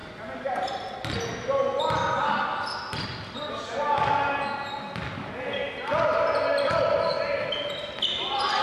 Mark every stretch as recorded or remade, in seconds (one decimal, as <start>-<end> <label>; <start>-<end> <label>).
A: 0.0-8.6 recorded